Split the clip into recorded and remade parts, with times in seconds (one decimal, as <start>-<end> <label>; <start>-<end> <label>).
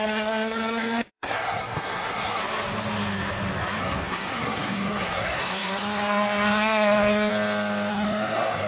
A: 0.0-2.4 remade; 2.4-3.8 recorded; 3.8-7.3 remade; 7.3-7.9 recorded; 7.9-8.7 remade